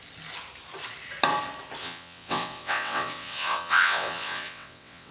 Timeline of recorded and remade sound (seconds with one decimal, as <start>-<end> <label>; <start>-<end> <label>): 0.0-1.8 recorded; 1.8-5.1 remade

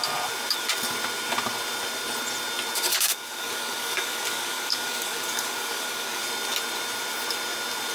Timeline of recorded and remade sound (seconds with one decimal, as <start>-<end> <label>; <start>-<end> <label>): 0.0-2.9 recorded; 2.9-6.2 remade; 6.2-7.9 recorded

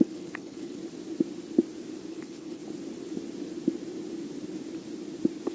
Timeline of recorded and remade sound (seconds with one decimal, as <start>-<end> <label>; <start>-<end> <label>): 0.0-0.8 remade; 0.8-2.1 recorded; 2.1-2.6 remade; 2.6-5.5 recorded

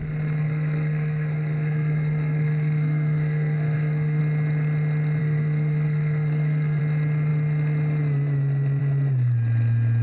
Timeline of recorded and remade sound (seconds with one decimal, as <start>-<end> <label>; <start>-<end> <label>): 0.0-0.4 recorded; 0.4-4.2 remade; 4.2-5.2 recorded; 5.2-6.8 remade; 6.8-10.0 recorded

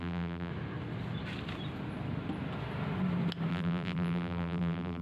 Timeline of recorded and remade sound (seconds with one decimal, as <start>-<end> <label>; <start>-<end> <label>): 0.0-0.5 remade; 0.5-3.5 recorded; 3.5-5.0 remade